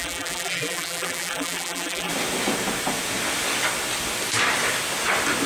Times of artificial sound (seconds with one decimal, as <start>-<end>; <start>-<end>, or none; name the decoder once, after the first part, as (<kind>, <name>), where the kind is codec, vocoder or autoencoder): 0.0-2.1 (vocoder, BigVGAN v2)